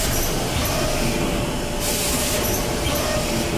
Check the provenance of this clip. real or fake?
real